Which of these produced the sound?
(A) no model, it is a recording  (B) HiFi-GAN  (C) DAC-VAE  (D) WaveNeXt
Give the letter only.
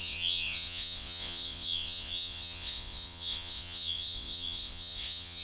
D